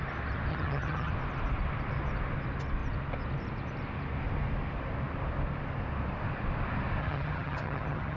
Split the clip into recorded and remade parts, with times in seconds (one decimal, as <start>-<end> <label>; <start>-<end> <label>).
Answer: 0.0-0.5 recorded; 0.5-1.1 remade; 1.1-7.0 recorded; 7.0-8.2 remade